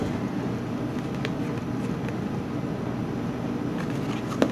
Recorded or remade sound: recorded